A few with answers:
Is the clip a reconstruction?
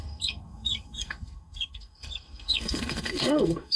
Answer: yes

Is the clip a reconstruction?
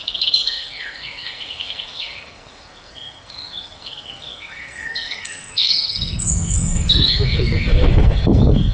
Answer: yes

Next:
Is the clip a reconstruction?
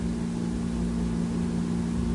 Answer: no